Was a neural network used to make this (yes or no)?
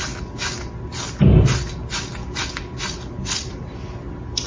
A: no